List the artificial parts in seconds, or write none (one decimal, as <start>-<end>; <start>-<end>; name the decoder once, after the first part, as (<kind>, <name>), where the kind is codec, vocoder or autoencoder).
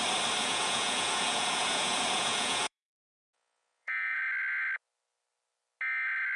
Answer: 0.4-4.2 (vocoder, Vocos)